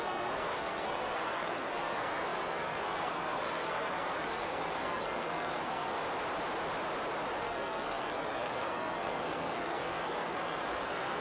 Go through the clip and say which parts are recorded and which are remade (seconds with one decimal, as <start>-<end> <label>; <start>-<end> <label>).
0.0-6.0 remade; 6.0-7.4 recorded; 7.4-11.2 remade